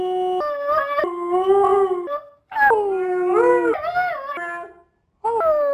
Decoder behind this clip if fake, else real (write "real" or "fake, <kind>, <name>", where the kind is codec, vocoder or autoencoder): real